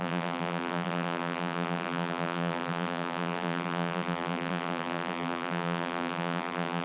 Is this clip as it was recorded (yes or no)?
no